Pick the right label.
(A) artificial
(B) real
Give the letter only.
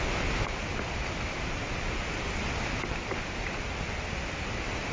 B